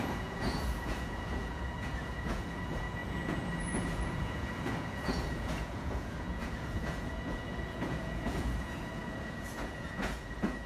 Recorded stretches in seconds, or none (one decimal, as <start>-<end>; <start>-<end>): none